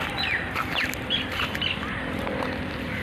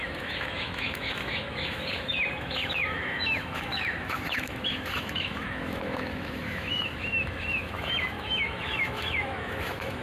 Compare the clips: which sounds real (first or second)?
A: first